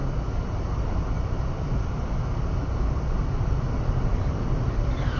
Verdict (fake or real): fake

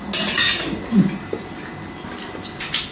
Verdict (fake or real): real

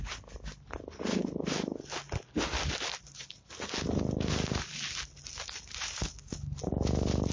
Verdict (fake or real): real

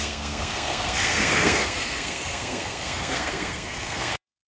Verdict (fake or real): fake